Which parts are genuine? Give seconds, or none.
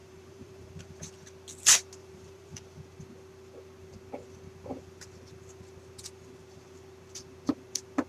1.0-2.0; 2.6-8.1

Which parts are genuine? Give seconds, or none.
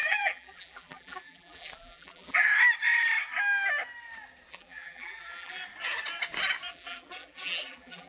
2.5-4.5; 5.6-6.7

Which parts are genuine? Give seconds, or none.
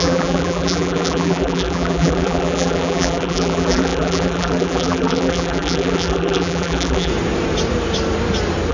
7.1-8.7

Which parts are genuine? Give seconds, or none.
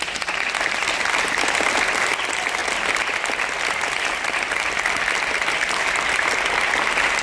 0.0-7.2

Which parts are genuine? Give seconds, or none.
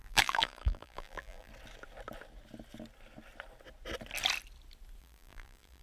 1.5-5.0